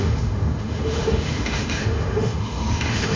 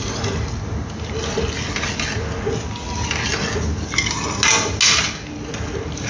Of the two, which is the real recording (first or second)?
second